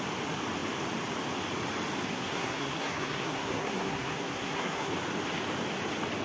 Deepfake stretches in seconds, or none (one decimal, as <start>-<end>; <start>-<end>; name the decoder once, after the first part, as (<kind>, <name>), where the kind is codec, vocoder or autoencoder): 2.1-4.9 (codec, SNAC)